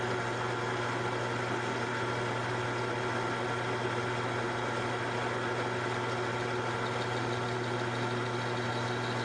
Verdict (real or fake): real